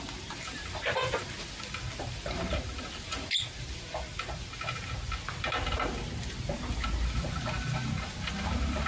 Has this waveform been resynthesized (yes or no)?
no